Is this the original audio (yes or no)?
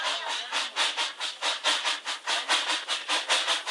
yes